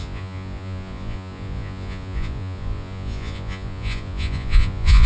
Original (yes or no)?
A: no